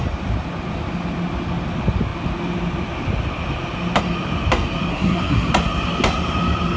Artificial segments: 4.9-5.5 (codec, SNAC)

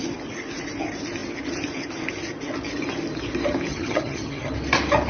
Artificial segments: 3.7-4.5 (vocoder, HiFi-GAN)

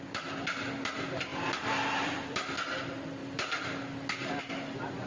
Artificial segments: none